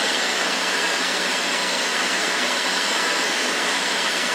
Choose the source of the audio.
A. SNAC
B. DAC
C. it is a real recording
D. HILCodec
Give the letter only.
A